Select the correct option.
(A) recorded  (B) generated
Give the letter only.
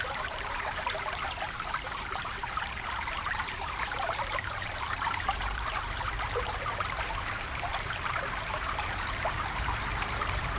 B